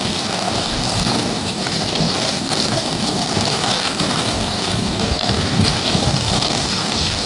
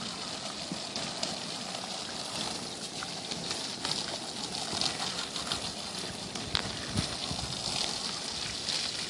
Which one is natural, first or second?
second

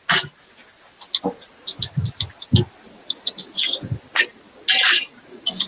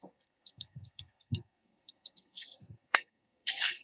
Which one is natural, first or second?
first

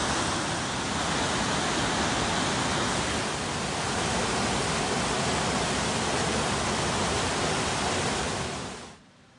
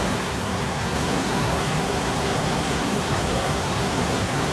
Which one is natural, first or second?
first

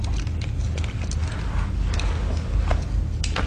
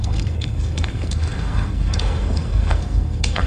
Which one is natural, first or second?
first